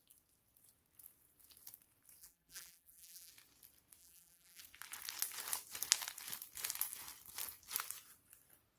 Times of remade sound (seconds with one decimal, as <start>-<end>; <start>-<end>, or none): 2.2-3.3; 4.0-4.6